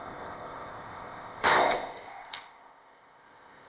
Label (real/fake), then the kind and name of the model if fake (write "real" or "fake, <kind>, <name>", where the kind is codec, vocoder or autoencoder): fake, codec, ZipCodec